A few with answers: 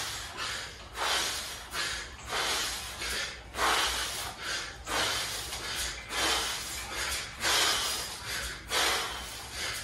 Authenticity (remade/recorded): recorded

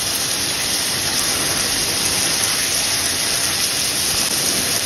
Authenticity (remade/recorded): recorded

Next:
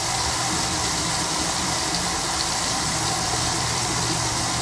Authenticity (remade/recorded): remade